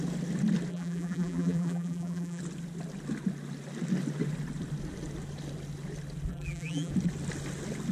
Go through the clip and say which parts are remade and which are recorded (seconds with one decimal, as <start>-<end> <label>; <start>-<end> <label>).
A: 0.0-0.7 recorded; 0.7-2.4 remade; 2.4-6.3 recorded; 6.3-6.9 remade; 6.9-7.9 recorded